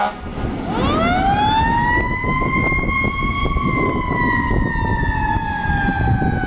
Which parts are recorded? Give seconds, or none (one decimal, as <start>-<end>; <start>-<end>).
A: 0.0-6.5